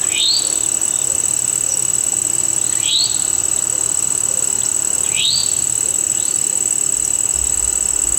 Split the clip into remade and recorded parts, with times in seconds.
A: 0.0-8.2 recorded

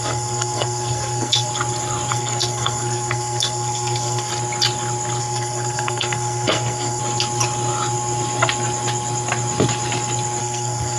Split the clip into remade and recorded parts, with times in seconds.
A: 0.0-1.5 remade; 1.5-2.1 recorded; 2.1-4.3 remade; 4.3-5.2 recorded; 5.2-7.0 remade; 7.0-10.4 recorded; 10.4-11.0 remade